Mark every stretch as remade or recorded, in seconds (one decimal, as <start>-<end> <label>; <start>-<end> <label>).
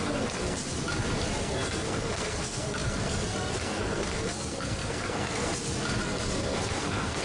0.0-0.6 remade; 0.6-1.4 recorded; 1.4-5.5 remade; 5.5-6.0 recorded; 6.0-7.2 remade